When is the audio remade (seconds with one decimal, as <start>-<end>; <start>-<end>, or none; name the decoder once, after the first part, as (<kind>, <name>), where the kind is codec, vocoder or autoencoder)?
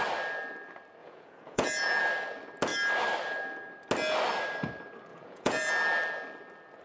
1.0-2.0 (vocoder, Vocos); 5.1-5.7